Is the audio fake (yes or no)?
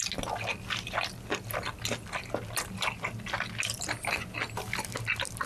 no